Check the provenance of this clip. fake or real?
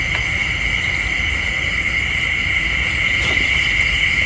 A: real